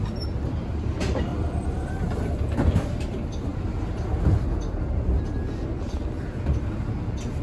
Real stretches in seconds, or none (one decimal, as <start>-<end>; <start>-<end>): 0.0-1.3; 2.7-7.4